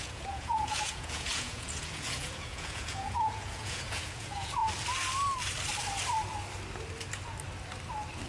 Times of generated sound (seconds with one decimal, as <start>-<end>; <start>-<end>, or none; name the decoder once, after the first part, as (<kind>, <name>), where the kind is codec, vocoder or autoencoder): 0.0-4.6 (vocoder, Vocos)